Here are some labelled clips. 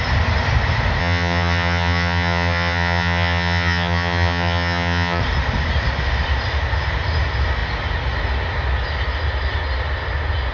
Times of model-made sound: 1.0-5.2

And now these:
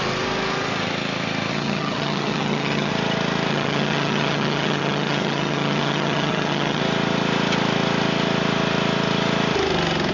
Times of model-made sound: 1.5-2.9; 3.5-6.8

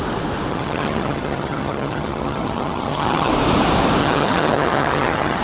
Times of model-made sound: 0.5-3.3; 4.0-5.4

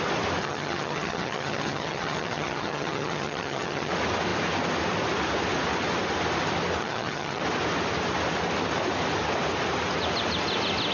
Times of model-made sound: 0.4-3.9; 6.8-7.4

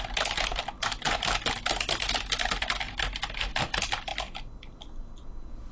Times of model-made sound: none

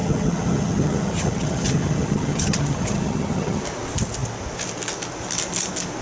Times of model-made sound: 0.0-3.6

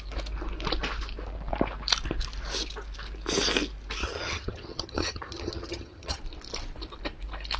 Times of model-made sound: 4.0-6.2

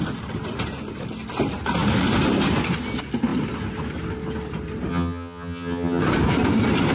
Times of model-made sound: 4.9-6.0